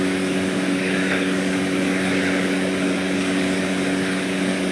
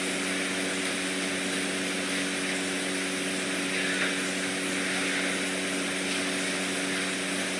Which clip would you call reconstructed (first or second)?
first